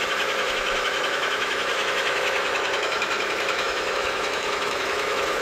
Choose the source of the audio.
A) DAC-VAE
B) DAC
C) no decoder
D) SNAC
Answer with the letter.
A